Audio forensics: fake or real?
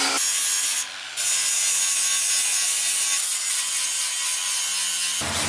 real